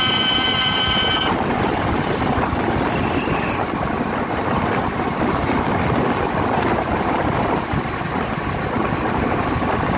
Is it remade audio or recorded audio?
recorded